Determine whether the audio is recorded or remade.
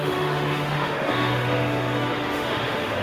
remade